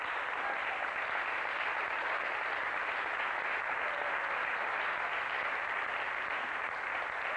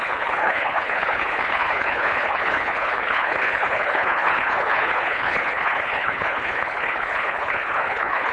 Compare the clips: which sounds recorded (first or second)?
first